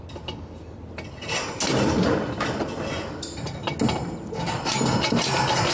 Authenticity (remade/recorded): recorded